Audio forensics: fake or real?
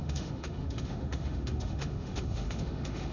fake